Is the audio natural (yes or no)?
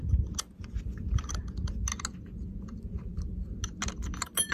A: yes